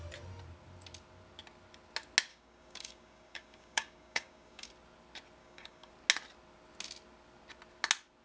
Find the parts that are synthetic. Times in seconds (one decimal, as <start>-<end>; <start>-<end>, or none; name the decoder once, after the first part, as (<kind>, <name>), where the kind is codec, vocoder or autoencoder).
2.3-4.7 (codec, DAC); 5.4-5.9